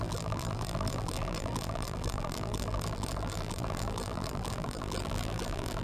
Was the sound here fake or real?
fake